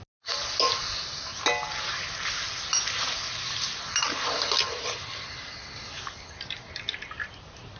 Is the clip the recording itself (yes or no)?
yes